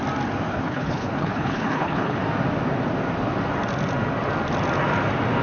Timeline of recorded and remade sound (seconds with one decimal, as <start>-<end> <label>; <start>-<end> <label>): 0.0-0.5 recorded; 0.5-2.2 remade; 2.2-5.4 recorded

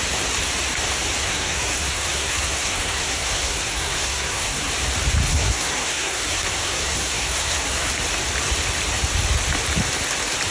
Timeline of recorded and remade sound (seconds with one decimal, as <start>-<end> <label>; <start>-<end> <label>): 0.0-1.2 recorded; 1.2-4.7 remade; 4.7-5.3 recorded; 5.3-7.9 remade; 7.9-10.5 recorded

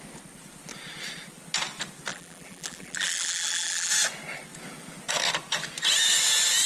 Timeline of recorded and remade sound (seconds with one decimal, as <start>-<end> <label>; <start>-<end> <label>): 0.0-2.1 recorded; 2.1-3.9 remade; 3.9-6.7 recorded

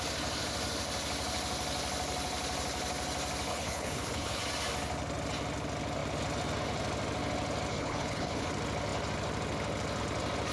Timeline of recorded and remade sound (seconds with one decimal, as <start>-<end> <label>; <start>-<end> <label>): 0.0-3.5 recorded; 3.5-4.4 remade; 4.4-7.7 recorded; 7.7-8.5 remade; 8.5-10.5 recorded